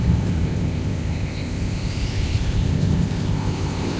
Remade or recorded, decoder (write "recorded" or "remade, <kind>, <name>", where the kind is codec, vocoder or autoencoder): remade, codec, ZipCodec